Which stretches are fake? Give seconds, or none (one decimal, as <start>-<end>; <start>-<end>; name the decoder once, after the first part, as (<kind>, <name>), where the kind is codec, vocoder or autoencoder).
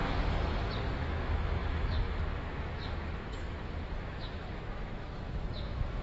1.0-6.0 (autoencoder, DAC-VAE)